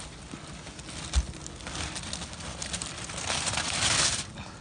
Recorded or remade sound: recorded